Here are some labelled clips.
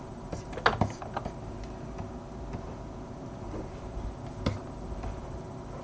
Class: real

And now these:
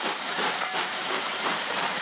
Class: fake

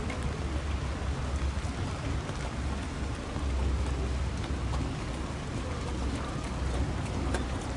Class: real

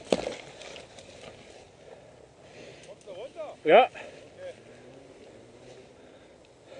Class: real